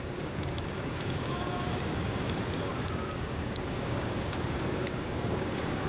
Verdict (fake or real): fake